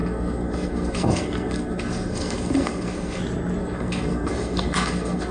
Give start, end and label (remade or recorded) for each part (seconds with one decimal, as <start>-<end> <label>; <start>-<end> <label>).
0.0-3.2 remade; 3.2-3.6 recorded; 3.6-5.3 remade